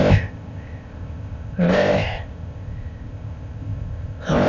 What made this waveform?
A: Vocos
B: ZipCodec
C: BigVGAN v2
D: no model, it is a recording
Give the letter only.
B